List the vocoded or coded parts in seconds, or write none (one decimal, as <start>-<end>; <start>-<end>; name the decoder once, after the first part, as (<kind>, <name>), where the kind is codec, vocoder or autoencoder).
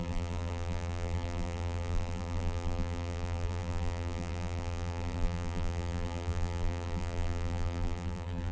0.0-8.5 (vocoder, BigVGAN v2)